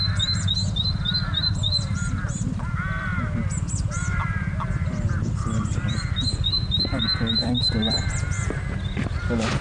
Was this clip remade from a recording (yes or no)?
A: yes